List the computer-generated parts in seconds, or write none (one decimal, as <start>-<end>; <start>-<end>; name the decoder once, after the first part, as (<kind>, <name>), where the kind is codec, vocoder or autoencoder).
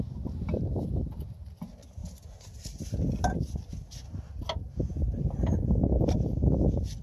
none